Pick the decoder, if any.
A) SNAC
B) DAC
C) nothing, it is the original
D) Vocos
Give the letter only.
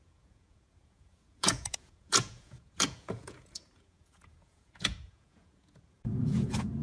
D